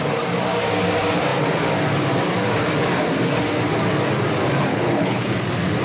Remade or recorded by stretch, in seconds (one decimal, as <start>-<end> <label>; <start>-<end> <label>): 0.0-4.7 recorded; 4.7-5.3 remade; 5.3-5.8 recorded